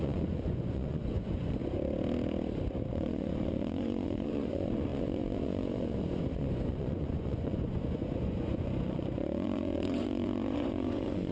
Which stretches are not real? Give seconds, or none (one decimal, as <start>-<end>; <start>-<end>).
0.0-1.6; 2.9-11.3